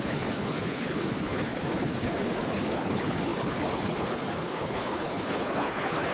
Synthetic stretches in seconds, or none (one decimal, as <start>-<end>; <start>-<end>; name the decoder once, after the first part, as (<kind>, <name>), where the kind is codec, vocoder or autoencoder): 0.0-6.1 (codec, HILCodec)